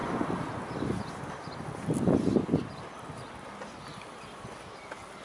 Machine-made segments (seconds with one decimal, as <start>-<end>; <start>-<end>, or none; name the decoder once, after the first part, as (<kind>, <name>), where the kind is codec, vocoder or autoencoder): none